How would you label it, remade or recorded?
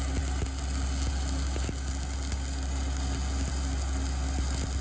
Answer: recorded